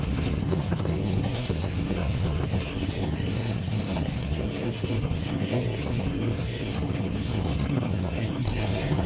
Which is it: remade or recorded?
remade